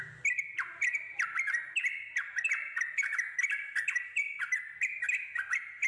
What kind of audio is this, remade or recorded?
recorded